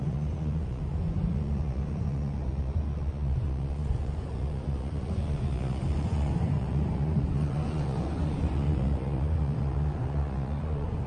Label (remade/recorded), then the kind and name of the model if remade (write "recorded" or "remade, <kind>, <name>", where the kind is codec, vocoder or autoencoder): remade, vocoder, Vocos